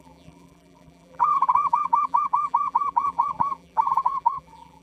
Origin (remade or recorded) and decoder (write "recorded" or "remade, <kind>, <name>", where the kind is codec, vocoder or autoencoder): remade, vocoder, BigVGAN v2